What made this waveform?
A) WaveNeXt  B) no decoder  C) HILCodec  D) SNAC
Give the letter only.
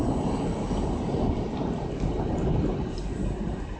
B